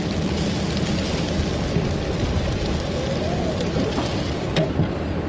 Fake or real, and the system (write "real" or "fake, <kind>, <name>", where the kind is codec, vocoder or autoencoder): real